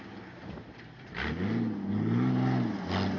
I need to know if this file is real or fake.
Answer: real